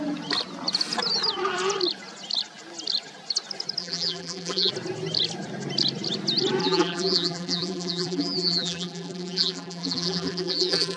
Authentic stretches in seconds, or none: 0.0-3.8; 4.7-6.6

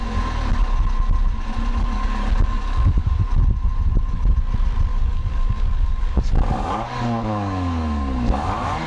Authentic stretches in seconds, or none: 0.0-1.8; 3.2-4.9

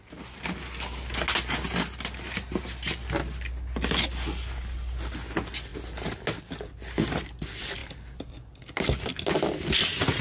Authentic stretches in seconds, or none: 0.0-10.2

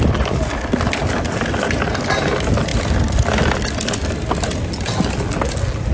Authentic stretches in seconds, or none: 0.0-5.9

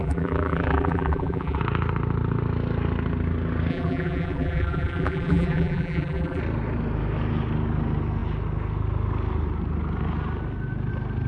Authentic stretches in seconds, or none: 1.6-3.7; 6.4-11.3

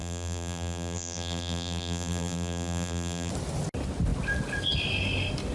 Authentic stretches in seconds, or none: 3.3-5.5